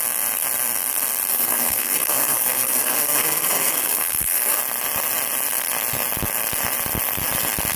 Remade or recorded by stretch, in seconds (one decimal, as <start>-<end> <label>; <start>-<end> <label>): 0.0-1.3 recorded; 1.3-4.6 remade; 4.6-7.8 recorded